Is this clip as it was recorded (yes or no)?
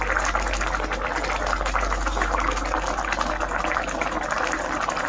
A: yes